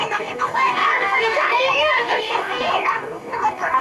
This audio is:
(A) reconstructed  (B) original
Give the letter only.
A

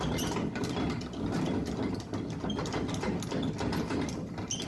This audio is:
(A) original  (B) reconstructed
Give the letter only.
A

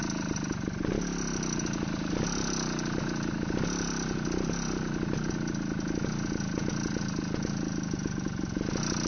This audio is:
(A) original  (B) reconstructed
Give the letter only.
A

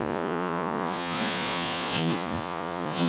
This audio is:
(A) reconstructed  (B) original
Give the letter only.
A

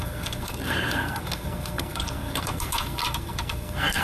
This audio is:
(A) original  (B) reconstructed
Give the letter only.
B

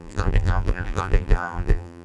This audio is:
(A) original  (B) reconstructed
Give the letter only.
B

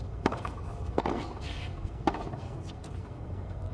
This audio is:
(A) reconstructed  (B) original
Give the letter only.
A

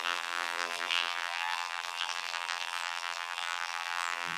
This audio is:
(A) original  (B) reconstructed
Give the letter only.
B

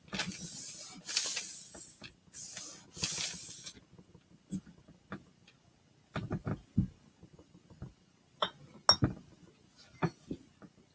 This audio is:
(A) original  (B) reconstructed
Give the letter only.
A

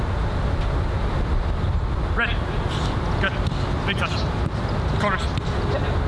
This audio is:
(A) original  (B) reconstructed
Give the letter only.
A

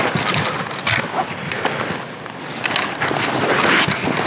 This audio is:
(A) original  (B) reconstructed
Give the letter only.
A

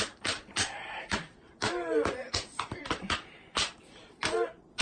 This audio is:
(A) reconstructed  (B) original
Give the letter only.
A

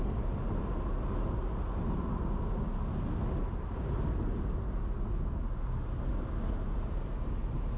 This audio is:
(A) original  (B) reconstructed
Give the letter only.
A